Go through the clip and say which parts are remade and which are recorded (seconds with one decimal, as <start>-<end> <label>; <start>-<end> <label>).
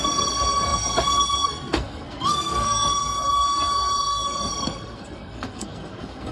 0.0-6.3 remade